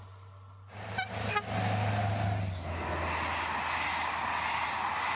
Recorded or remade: recorded